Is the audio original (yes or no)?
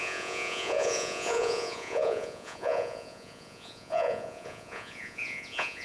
no